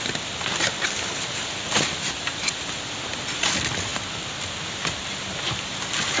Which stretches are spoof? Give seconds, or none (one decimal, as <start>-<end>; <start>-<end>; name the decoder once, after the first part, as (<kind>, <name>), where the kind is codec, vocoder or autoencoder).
none